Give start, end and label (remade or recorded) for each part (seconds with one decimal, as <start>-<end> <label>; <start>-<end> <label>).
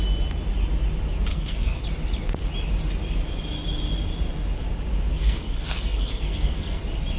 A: 0.0-1.3 recorded; 1.3-1.8 remade; 1.8-5.1 recorded; 5.1-6.8 remade; 6.8-7.2 recorded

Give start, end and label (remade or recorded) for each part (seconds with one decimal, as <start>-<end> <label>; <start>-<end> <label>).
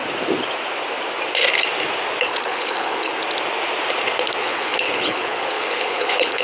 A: 0.0-2.2 recorded; 2.2-3.1 remade; 3.1-4.4 recorded; 4.4-6.4 remade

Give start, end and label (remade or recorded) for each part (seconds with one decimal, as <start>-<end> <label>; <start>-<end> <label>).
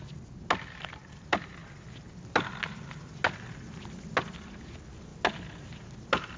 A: 0.0-6.4 recorded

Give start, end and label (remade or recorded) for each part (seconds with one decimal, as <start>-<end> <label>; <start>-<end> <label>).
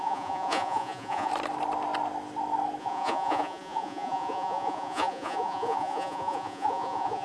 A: 0.0-1.3 remade; 1.3-2.8 recorded; 2.8-7.2 remade